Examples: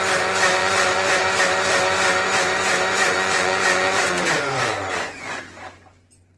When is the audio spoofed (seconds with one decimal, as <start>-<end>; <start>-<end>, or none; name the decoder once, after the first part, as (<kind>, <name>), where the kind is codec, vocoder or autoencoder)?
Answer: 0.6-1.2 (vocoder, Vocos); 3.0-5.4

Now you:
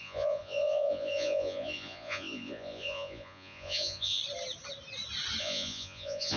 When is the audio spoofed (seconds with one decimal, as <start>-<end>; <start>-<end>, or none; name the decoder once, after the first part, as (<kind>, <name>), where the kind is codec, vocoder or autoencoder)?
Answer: 0.0-4.2 (vocoder, Vocos); 5.4-6.4

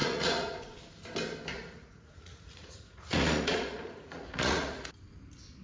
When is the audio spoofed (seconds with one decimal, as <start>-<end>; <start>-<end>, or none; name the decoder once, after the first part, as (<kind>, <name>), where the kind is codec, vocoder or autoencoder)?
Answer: 0.0-0.8 (vocoder, Vocos); 1.5-4.9

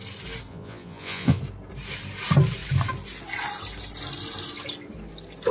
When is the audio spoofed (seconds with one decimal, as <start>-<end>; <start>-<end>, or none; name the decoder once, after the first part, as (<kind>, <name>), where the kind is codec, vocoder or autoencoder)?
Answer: 0.5-1.4 (vocoder, Vocos)

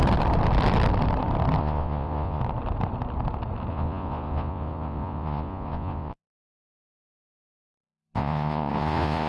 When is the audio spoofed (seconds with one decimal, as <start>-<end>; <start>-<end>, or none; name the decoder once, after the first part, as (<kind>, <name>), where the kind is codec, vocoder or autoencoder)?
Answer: 1.6-2.4 (vocoder, Vocos); 3.7-9.3

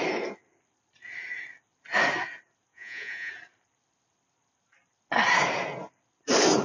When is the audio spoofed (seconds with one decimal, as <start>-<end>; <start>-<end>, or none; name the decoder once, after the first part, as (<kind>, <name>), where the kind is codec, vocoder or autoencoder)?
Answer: 2.7-3.3 (vocoder, Vocos)

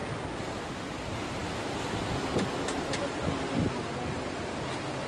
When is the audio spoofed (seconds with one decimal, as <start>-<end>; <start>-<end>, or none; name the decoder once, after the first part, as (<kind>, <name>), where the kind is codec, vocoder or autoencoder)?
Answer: none